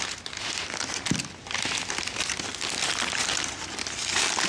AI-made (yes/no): no